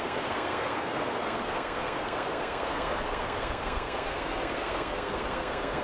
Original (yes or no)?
no